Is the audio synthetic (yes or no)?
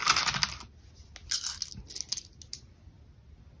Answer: no